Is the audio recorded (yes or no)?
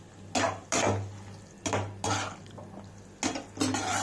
yes